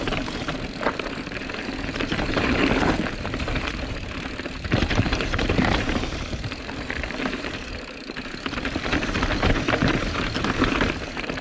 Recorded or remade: remade